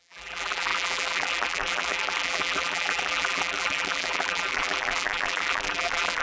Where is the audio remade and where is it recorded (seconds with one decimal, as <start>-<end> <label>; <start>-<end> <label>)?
0.0-6.2 remade